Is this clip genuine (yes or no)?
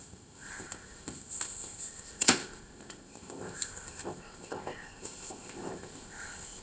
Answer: no